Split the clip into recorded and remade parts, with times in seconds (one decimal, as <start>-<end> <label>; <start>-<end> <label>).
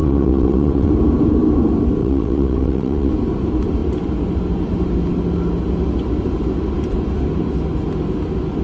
0.0-0.9 remade; 0.9-2.0 recorded; 2.0-3.1 remade; 3.1-8.6 recorded